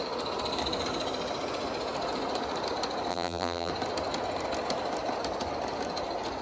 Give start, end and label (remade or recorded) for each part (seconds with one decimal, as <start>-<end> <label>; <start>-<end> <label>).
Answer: 0.0-3.1 recorded; 3.1-3.7 remade; 3.7-6.4 recorded